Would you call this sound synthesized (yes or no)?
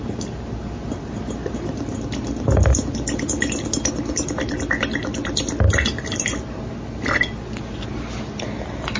no